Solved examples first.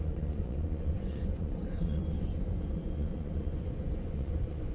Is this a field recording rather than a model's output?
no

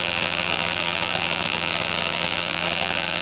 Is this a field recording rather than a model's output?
no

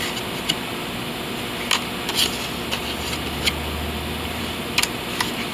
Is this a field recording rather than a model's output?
yes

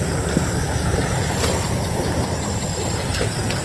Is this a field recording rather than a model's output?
no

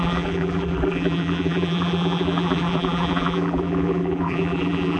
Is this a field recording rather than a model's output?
no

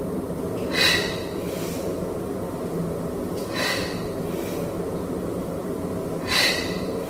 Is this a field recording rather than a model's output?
yes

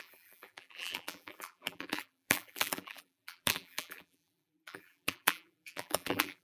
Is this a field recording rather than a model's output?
no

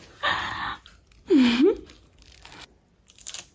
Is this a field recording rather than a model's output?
yes